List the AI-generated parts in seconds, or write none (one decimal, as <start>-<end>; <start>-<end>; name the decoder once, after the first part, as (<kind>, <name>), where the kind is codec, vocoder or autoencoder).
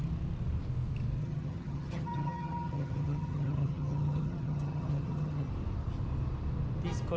1.2-5.5 (vocoder, HiFi-GAN)